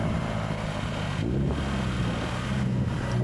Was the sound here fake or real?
real